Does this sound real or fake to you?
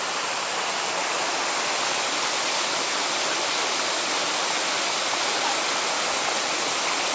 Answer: real